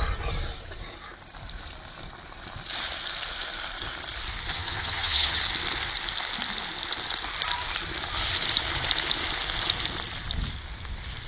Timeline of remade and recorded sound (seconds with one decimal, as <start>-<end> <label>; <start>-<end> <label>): 0.0-4.5 recorded; 4.5-5.4 remade; 5.4-11.3 recorded